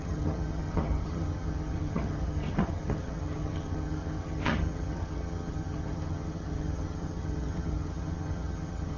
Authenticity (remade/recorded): remade